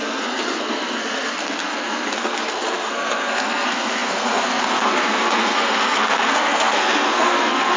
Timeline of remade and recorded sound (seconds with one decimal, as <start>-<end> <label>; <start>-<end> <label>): 0.0-7.8 remade